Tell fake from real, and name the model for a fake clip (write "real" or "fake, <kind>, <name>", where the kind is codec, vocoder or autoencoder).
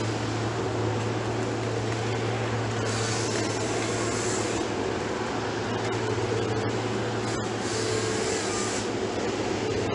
real